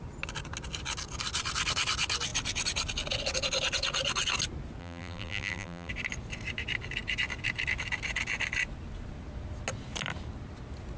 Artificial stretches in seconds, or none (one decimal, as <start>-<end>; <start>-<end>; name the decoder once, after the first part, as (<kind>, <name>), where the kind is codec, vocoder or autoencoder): 4.8-5.9 (vocoder, BigVGAN v2)